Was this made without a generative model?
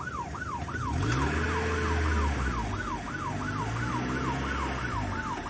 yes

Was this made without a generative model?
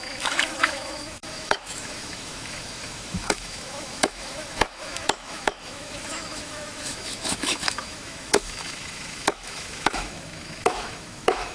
no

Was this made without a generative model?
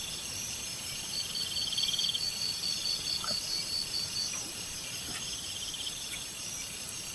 no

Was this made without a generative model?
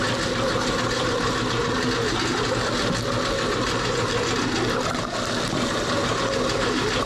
yes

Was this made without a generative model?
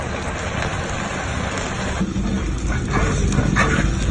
yes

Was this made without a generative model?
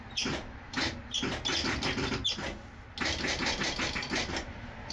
yes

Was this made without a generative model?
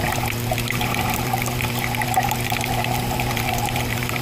no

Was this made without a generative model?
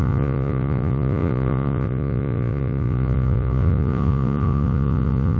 no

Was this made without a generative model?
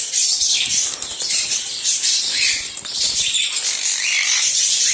no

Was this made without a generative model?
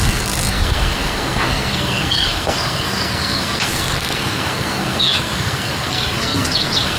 no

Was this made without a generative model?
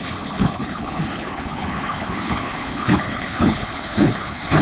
no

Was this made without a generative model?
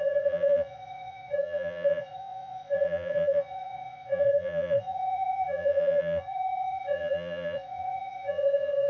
no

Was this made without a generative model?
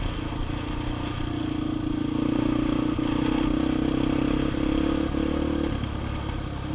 yes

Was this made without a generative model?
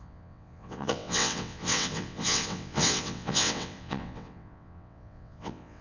no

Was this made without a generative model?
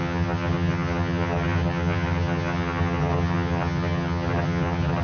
no